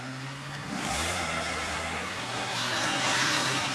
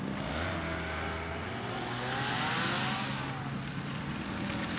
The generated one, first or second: first